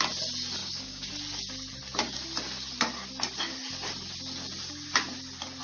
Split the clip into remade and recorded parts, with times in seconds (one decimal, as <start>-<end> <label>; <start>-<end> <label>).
0.0-0.6 recorded; 0.6-1.1 remade; 1.1-5.6 recorded